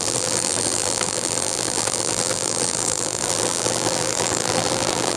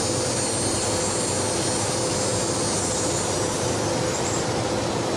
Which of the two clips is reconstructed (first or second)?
first